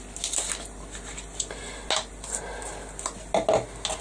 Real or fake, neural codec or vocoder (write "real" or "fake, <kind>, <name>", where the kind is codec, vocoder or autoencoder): real